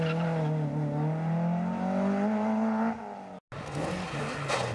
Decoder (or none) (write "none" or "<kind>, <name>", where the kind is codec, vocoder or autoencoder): none